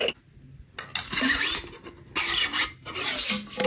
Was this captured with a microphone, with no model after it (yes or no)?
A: yes